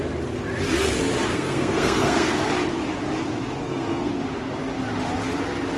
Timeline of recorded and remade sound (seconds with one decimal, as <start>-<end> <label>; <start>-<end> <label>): 0.0-1.3 recorded; 1.3-2.3 remade; 2.3-3.6 recorded; 3.6-4.1 remade; 4.1-5.8 recorded